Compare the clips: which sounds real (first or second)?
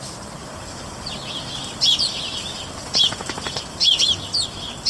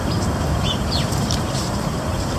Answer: first